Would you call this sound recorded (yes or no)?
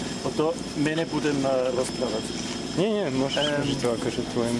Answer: yes